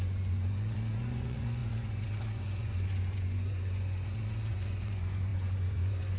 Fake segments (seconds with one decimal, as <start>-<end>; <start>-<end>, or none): 0.0-6.2